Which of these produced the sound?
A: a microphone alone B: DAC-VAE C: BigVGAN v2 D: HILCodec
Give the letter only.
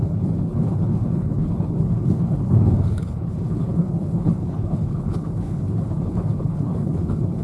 D